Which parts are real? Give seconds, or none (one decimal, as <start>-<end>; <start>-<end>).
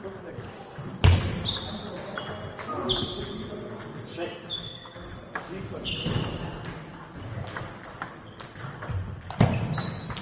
0.0-10.2